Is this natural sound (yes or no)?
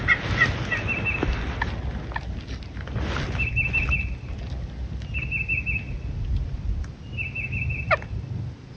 yes